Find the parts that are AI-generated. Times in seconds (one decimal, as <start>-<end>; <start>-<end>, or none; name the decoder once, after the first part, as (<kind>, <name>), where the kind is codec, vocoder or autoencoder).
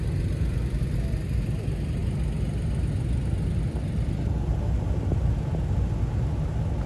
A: none